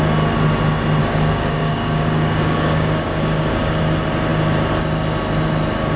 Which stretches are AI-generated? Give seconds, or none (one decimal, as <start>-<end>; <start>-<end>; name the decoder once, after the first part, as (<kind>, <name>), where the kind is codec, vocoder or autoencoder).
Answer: 1.0-3.8 (codec, DAC)